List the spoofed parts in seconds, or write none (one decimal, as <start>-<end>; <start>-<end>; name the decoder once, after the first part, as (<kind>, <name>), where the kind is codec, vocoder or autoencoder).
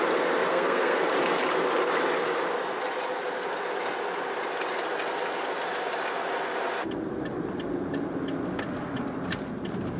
0.5-1.0 (codec, SNAC)